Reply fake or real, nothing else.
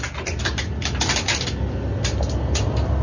real